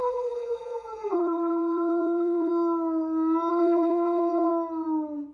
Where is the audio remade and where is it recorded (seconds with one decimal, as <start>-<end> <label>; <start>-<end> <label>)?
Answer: 0.0-2.5 remade; 2.5-3.5 recorded; 3.5-4.5 remade; 4.5-5.3 recorded